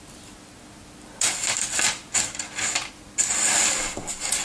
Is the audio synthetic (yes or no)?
no